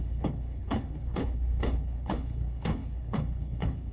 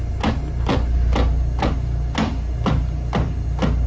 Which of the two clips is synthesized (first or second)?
first